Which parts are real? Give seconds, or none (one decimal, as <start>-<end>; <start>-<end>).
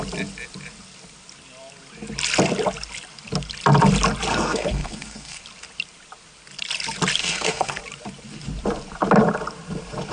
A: 0.0-4.3; 5.4-7.2; 7.8-10.1